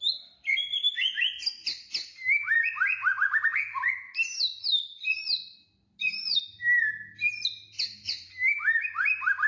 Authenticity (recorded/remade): recorded